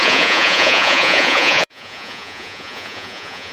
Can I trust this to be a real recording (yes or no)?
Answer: no